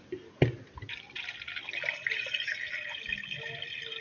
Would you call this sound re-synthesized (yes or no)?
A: no